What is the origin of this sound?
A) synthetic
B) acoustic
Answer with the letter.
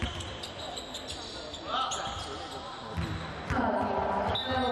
B